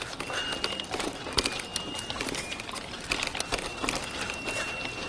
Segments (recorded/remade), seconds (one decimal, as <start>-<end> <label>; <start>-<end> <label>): 0.0-5.1 recorded